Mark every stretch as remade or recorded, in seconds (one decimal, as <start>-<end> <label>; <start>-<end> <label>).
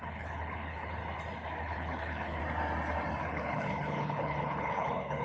0.0-1.0 remade; 1.0-1.6 recorded; 1.6-2.4 remade; 2.4-3.2 recorded; 3.2-5.2 remade